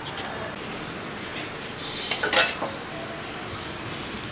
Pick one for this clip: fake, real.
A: real